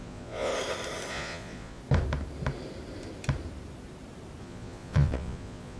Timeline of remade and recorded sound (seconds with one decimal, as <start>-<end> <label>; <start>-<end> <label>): 0.0-0.5 remade; 0.5-1.1 recorded; 1.1-1.8 remade; 1.8-4.4 recorded; 4.4-5.8 remade